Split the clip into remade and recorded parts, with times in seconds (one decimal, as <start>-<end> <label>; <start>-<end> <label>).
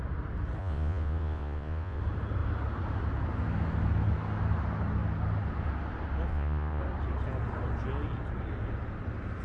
0.0-0.6 recorded; 0.6-2.0 remade; 2.0-6.3 recorded; 6.3-6.8 remade; 6.8-9.4 recorded